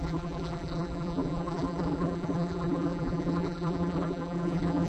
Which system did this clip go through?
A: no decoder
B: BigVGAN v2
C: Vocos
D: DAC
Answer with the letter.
B